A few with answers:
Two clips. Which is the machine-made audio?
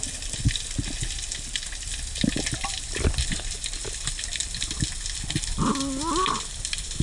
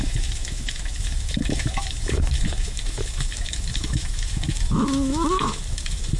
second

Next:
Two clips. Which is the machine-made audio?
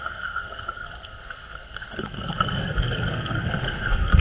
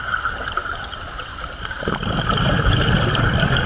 first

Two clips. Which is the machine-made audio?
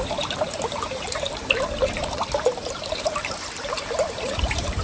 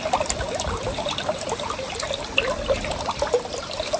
first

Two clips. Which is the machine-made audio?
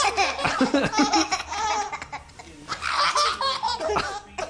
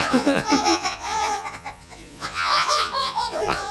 second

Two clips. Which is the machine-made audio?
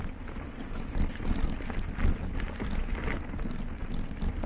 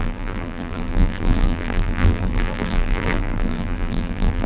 second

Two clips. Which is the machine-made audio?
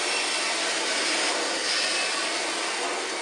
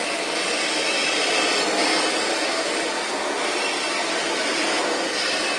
second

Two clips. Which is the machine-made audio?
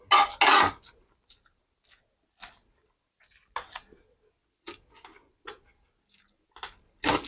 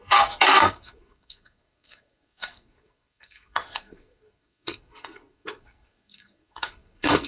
second